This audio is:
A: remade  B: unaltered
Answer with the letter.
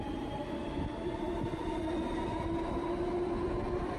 B